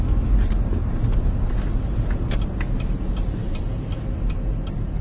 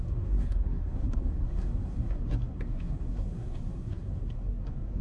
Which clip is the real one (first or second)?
first